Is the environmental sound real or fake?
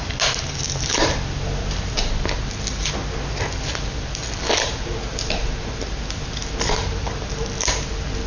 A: real